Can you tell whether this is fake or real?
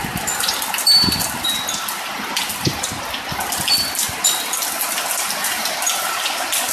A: real